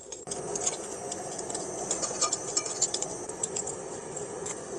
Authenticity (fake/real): fake